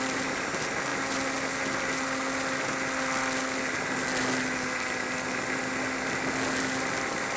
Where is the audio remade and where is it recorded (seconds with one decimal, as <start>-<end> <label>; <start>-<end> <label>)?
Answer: 0.0-7.4 recorded